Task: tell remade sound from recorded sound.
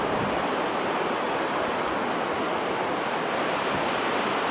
recorded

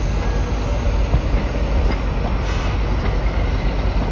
recorded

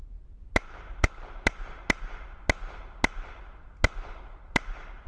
recorded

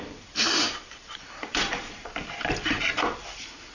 remade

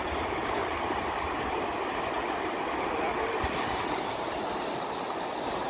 recorded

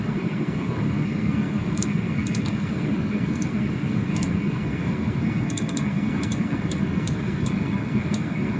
remade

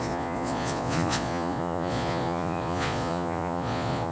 remade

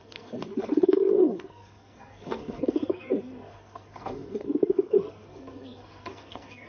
remade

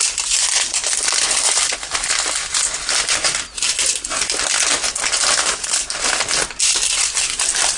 recorded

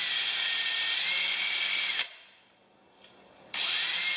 recorded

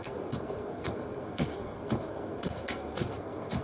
remade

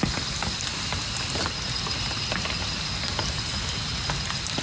recorded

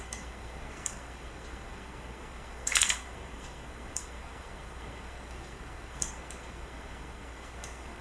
remade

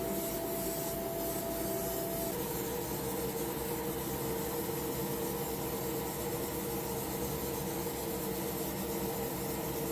recorded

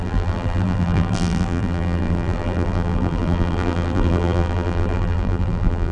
remade